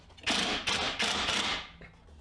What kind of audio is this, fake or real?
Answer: real